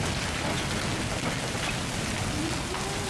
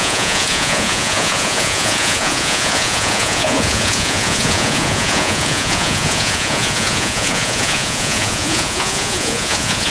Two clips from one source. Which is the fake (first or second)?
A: second